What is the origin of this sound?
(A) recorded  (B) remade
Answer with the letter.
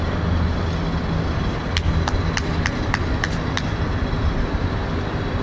A